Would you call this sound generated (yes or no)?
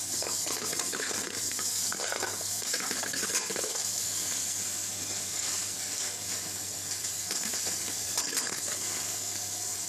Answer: yes